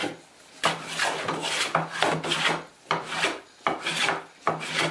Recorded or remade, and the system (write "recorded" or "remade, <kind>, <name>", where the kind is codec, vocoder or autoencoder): recorded